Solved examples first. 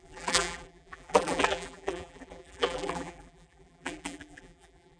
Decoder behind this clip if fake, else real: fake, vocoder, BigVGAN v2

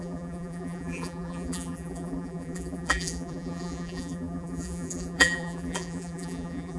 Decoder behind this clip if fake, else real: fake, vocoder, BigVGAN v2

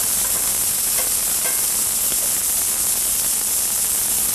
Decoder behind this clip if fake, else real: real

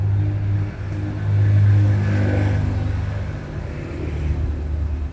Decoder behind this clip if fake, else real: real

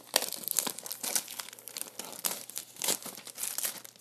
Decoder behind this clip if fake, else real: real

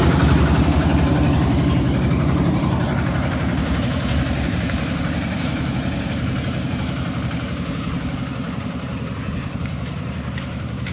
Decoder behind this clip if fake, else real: fake, vocoder, BigVGAN v2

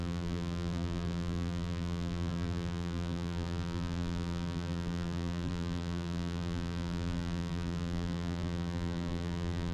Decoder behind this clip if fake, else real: fake, vocoder, BigVGAN v2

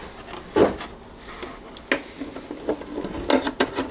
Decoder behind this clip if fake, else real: real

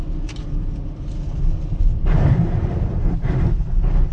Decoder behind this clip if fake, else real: real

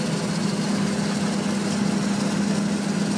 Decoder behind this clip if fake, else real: real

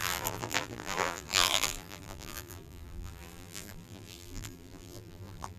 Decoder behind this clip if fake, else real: fake, vocoder, BigVGAN v2